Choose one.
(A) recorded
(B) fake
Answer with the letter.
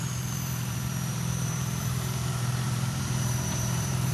B